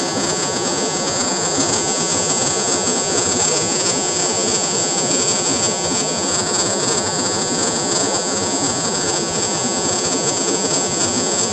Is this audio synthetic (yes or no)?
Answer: yes